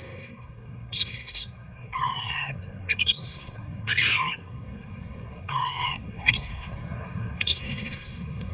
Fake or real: fake